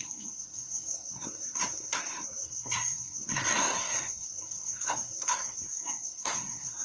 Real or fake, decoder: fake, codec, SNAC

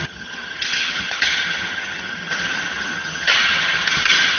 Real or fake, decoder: fake, vocoder, HiFi-GAN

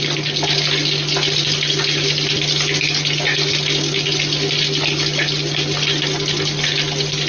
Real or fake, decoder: real